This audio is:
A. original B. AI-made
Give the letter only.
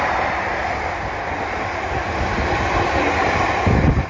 A